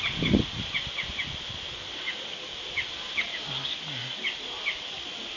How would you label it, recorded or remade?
recorded